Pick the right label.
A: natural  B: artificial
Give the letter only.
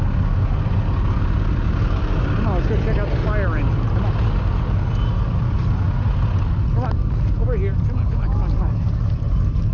A